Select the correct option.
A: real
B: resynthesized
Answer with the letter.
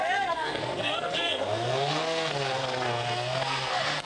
B